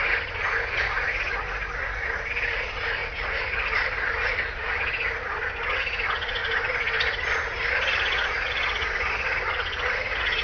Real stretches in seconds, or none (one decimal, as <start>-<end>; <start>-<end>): 0.0-10.4